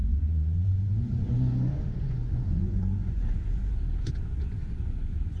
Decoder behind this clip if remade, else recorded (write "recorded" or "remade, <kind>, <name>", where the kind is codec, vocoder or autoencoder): remade, vocoder, Vocos